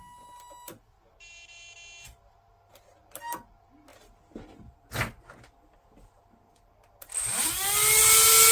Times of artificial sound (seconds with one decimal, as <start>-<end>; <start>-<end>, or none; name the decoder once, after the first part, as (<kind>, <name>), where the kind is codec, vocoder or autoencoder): none